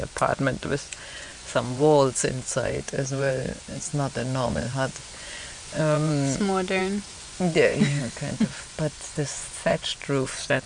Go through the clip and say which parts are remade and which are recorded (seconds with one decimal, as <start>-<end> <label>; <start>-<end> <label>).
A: 0.0-10.7 remade